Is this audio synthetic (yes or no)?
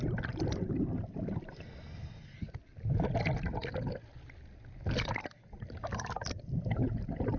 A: no